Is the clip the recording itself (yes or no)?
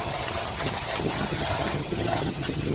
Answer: no